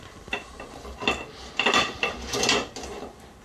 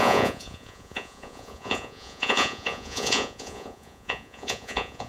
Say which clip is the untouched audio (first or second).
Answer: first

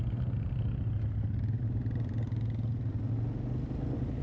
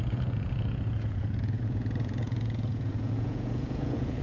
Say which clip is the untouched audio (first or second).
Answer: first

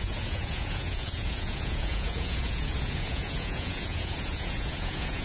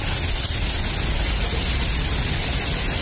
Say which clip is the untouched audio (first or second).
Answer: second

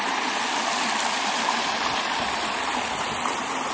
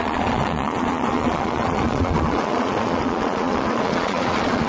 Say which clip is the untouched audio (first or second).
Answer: first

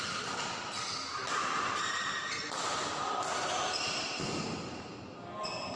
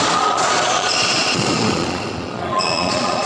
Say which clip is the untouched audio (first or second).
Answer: first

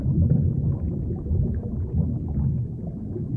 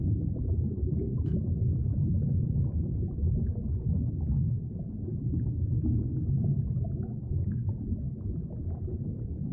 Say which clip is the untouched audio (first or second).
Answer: first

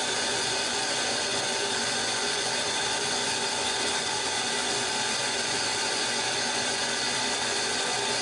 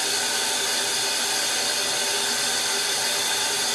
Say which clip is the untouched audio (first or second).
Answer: second